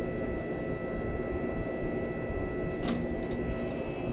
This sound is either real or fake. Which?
real